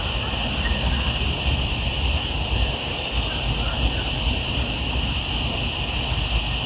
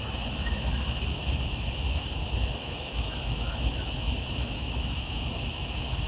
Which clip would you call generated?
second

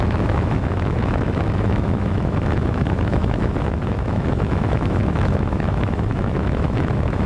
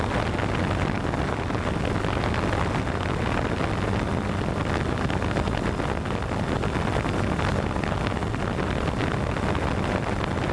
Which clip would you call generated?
first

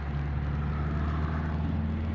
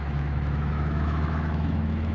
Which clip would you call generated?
second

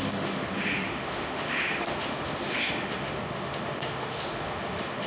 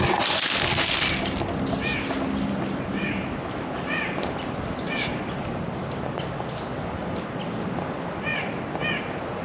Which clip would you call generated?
first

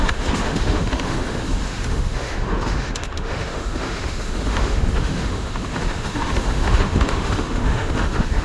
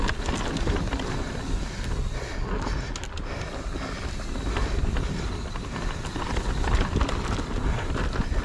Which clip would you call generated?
first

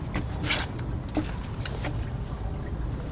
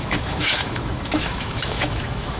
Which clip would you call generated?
second